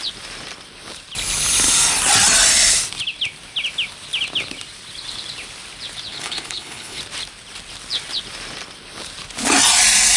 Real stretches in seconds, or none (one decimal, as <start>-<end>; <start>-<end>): 0.0-6.1; 7.0-10.2